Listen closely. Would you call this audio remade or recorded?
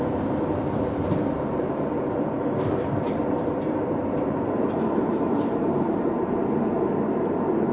remade